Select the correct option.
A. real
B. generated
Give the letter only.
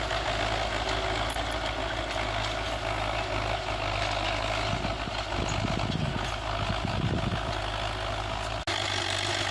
A